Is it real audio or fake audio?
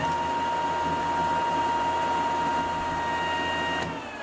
real